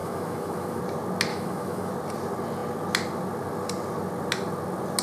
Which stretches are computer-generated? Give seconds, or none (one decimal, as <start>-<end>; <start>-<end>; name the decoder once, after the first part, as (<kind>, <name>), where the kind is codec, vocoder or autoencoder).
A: 0.0-0.8 (autoencoder, DAC-VAE); 1.3-1.9

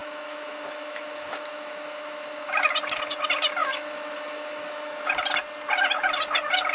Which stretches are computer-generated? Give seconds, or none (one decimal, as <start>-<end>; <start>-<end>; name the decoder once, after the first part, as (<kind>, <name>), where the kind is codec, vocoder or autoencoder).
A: 0.0-2.7 (autoencoder, DAC-VAE); 3.6-5.1

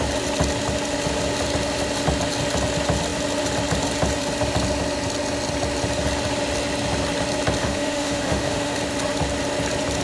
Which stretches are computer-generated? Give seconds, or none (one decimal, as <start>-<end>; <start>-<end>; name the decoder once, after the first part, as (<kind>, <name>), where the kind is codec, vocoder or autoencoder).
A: 7.6-8.8 (autoencoder, DAC-VAE)

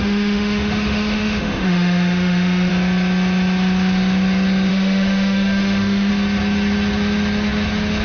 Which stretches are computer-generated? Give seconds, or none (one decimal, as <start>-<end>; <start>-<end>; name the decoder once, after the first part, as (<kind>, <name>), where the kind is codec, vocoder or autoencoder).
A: 0.0-2.7 (autoencoder, DAC-VAE); 4.7-6.1